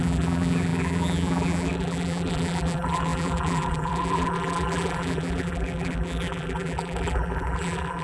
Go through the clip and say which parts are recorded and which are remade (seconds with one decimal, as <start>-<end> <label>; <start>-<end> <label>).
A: 0.0-8.0 remade

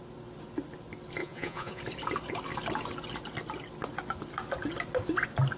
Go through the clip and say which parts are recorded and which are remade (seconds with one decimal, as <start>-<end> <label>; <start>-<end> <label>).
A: 0.0-1.2 recorded; 1.2-1.8 remade; 1.8-5.6 recorded

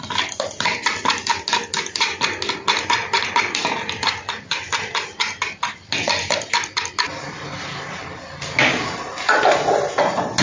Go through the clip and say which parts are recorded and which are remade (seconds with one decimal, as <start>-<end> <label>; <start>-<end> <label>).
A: 0.0-10.4 recorded

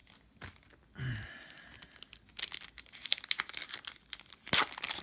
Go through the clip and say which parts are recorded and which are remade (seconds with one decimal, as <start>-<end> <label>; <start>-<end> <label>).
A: 0.0-5.0 recorded

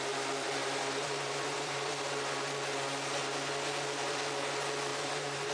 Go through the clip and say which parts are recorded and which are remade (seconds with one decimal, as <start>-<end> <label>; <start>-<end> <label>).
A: 0.0-0.6 recorded; 0.6-1.9 remade; 1.9-4.9 recorded; 4.9-5.5 remade